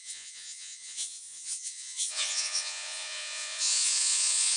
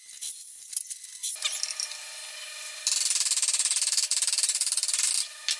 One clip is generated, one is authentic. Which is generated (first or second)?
first